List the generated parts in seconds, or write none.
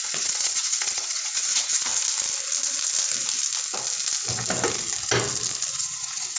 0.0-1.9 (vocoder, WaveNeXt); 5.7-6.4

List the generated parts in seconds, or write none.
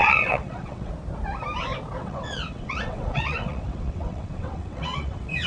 0.0-0.9 (vocoder, WaveNeXt); 2.0-5.5